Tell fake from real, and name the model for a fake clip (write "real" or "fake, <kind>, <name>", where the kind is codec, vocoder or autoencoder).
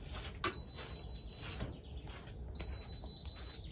real